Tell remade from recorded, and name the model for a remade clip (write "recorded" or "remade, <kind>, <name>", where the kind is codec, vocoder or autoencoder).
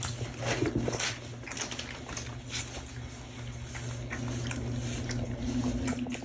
recorded